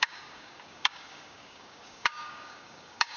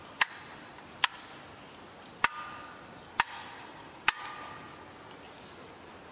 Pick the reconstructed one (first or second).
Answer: first